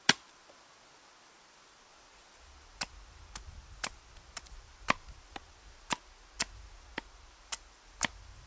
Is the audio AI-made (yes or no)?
no